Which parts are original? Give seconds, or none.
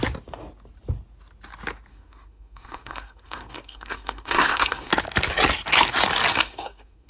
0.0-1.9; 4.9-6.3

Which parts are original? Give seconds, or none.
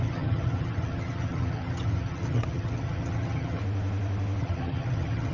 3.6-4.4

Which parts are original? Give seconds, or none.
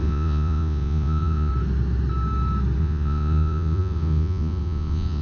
1.5-2.8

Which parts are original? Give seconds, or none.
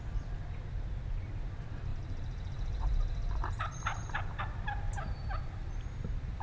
0.0-1.9; 4.4-6.4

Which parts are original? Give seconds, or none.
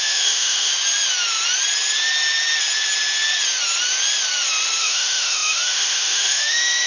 0.7-4.8